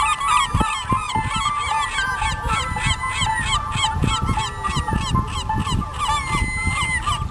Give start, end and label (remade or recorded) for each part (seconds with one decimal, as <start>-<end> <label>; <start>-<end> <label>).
0.0-7.3 recorded